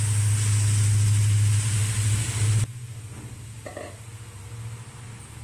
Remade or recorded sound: recorded